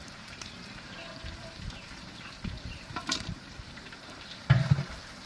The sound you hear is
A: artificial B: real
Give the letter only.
A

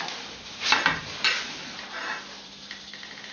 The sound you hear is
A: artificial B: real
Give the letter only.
A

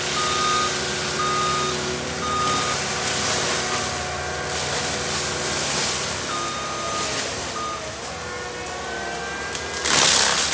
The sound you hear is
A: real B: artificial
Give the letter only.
A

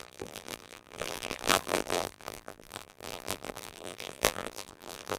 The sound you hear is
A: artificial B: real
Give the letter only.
A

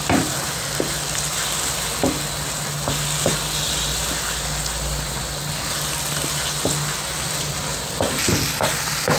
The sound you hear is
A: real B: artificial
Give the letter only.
A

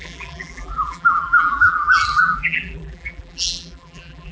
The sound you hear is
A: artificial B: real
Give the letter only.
A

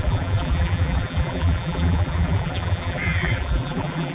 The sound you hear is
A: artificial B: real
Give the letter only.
A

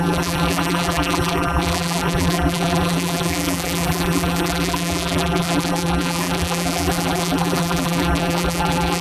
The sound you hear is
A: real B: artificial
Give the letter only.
B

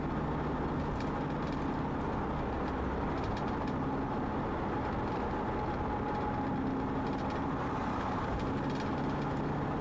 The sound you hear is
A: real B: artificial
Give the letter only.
A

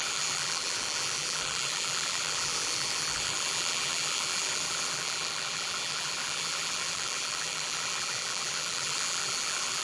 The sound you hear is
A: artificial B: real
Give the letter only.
A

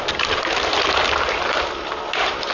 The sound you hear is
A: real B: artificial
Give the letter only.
B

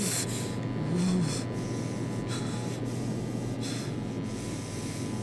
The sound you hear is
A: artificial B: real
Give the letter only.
B